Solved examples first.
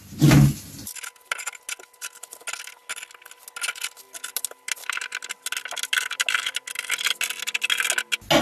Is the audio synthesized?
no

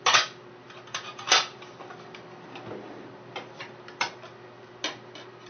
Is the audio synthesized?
no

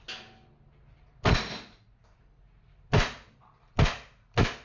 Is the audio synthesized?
no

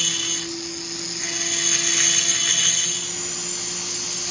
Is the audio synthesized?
no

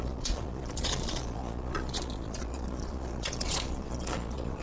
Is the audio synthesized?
yes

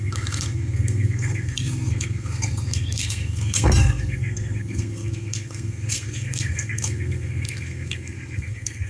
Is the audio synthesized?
yes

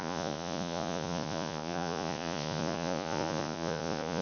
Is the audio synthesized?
yes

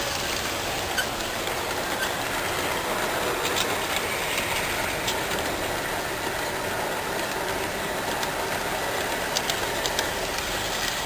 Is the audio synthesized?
no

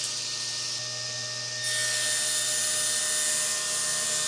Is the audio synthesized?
no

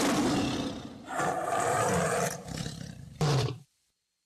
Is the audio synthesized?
yes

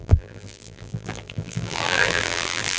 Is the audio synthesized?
yes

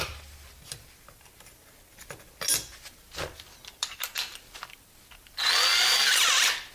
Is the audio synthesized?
no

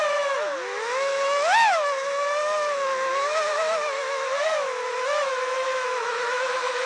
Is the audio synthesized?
yes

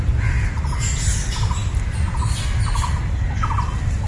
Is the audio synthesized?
no